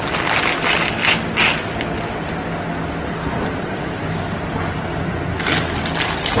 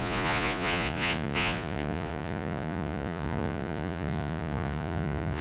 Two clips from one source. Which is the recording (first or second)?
first